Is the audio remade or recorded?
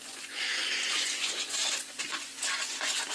remade